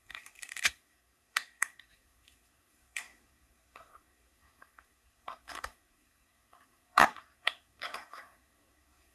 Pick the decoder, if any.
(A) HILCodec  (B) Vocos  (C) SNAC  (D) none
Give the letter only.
C